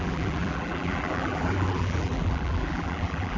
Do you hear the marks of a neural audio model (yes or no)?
yes